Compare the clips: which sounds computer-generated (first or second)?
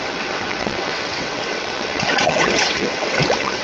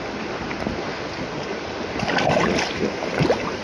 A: first